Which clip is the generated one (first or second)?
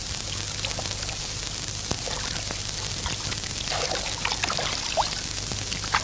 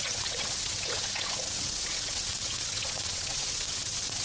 second